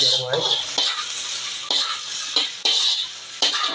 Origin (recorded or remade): recorded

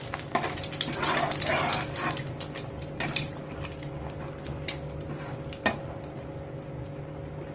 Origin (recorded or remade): recorded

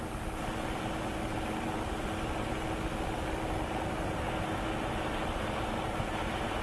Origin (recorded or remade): recorded